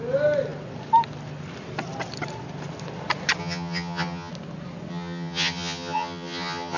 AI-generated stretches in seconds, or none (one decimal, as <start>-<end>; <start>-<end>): 3.4-4.3; 4.9-6.8